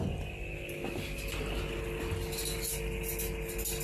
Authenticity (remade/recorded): recorded